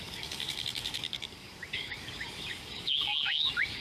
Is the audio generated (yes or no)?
yes